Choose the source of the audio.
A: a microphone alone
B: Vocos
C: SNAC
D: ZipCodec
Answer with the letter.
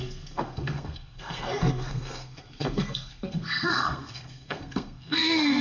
C